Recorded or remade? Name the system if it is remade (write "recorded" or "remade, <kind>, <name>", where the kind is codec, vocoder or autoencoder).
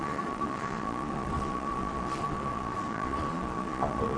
remade, vocoder, Vocos